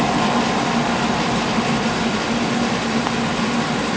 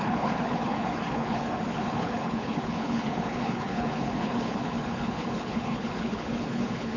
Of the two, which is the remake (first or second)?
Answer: second